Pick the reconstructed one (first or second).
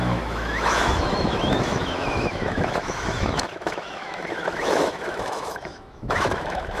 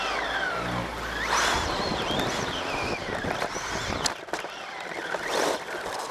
first